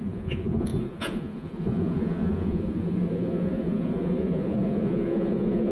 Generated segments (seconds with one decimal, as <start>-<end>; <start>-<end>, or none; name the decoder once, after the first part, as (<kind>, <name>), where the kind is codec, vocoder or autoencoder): 0.0-5.7 (vocoder, Vocos)